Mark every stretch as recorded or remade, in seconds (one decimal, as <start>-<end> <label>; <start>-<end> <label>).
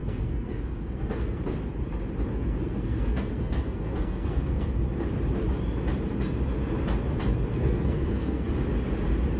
0.0-1.4 remade; 1.4-2.3 recorded; 2.3-4.8 remade; 4.8-7.5 recorded; 7.5-8.5 remade; 8.5-9.4 recorded